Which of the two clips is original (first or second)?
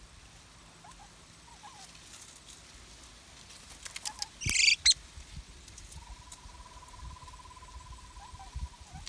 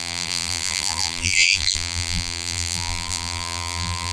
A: first